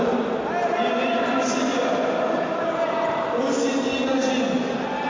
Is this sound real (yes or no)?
yes